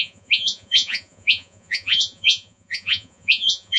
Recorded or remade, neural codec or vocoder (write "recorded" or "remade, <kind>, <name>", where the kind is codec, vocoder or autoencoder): remade, vocoder, Vocos